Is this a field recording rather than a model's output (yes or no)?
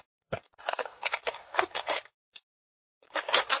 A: no